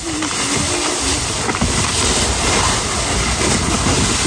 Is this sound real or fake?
real